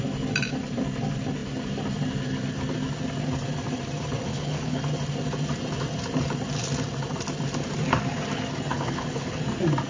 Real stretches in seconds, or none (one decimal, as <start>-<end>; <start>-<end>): 0.0-4.3; 4.8-8.7; 9.4-9.9